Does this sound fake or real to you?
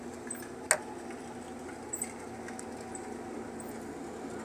real